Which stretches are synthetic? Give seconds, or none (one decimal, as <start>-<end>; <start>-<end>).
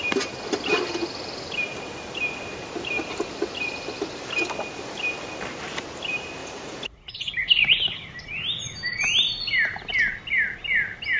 6.4-7.3